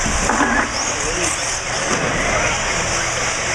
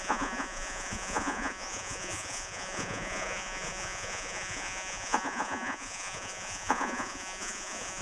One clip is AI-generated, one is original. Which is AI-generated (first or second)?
second